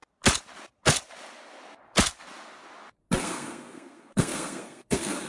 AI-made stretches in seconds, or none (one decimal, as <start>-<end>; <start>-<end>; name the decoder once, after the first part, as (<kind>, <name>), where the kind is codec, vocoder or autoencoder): 3.2-5.3 (codec, SNAC)